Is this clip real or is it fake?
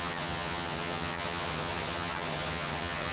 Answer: fake